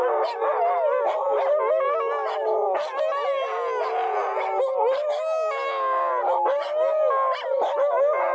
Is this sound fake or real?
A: real